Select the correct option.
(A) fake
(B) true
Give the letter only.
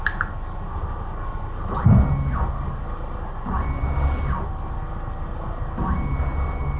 B